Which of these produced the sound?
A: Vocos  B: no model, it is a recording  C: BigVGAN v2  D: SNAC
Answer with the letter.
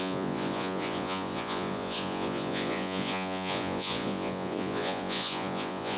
A